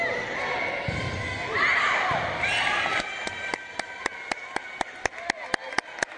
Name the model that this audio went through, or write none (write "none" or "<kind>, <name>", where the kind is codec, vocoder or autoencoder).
none